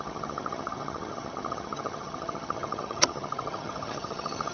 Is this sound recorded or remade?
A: remade